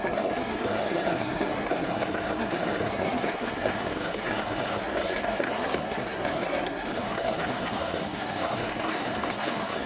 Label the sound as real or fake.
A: fake